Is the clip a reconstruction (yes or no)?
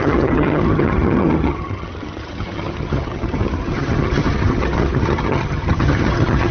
yes